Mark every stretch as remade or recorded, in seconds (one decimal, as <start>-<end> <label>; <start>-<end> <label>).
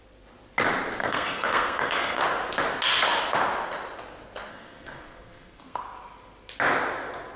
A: 0.0-1.0 recorded; 1.0-2.2 remade; 2.2-4.5 recorded; 4.5-5.8 remade; 5.8-7.4 recorded